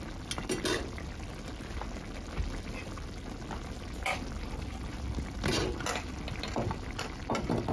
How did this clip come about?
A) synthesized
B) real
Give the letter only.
B